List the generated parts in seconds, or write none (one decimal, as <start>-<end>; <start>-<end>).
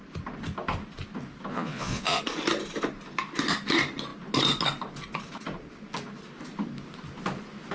1.5-2.2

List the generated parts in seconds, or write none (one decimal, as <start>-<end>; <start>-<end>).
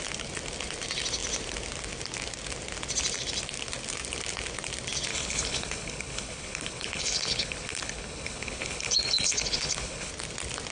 5.1-10.1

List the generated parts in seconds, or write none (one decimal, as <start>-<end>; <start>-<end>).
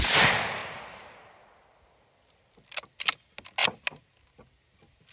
none